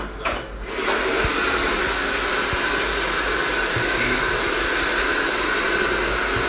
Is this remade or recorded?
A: recorded